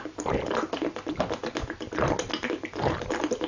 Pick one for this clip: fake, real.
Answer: real